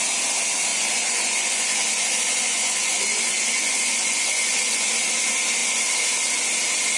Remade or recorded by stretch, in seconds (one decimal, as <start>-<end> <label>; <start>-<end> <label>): 0.0-0.7 recorded; 0.7-4.9 remade; 4.9-7.0 recorded